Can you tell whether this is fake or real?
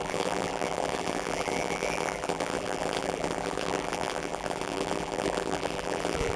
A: fake